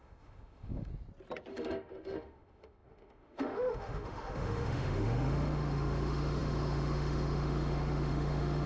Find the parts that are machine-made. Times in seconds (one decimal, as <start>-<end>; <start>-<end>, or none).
0.0-0.9; 1.5-8.7